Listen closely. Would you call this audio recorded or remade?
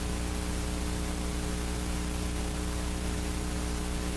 recorded